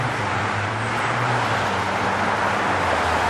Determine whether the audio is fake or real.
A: real